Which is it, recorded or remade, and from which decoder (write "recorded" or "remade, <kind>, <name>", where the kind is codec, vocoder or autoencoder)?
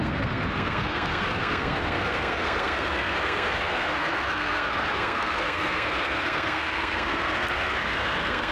remade, codec, SNAC